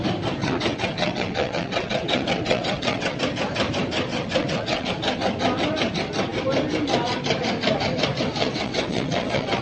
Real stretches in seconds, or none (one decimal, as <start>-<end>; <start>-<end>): 0.0-0.4; 3.2-4.1; 4.9-8.4